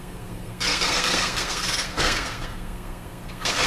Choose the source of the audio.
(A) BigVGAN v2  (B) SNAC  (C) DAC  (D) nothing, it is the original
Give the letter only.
B